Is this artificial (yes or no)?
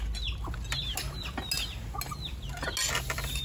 no